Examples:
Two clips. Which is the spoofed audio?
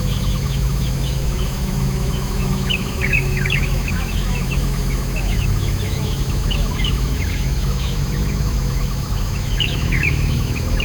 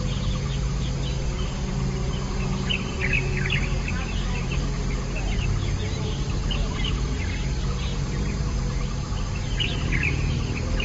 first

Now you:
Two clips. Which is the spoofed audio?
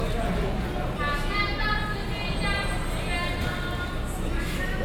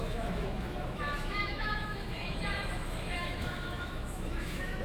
second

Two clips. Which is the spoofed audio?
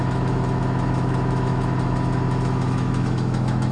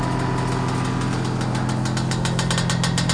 first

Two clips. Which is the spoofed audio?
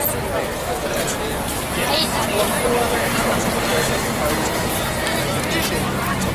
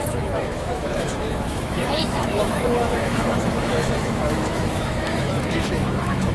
second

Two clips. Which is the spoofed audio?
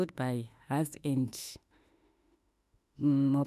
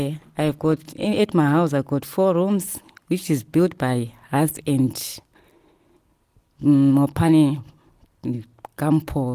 first